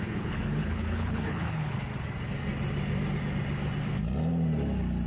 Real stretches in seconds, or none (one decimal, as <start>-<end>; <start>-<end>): 1.9-5.1